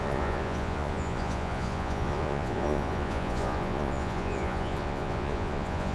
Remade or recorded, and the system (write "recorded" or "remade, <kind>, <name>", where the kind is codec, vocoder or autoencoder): remade, vocoder, Vocos